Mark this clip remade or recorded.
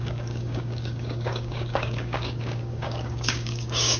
remade